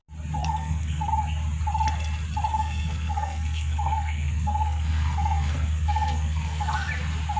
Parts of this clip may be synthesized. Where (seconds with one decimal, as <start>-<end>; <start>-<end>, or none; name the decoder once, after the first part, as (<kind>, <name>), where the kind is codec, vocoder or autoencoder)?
0.4-1.1 (codec, SNAC); 2.5-6.9